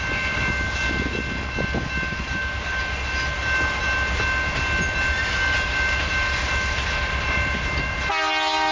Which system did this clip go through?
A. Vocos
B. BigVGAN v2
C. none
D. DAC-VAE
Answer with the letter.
C